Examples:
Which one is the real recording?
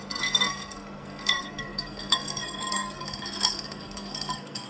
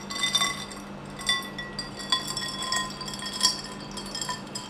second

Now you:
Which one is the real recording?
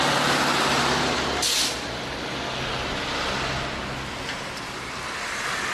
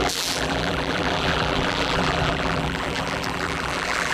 first